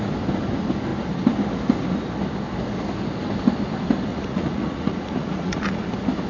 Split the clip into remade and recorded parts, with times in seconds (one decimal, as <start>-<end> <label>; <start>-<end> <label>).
0.0-4.1 recorded; 4.1-5.8 remade; 5.8-6.3 recorded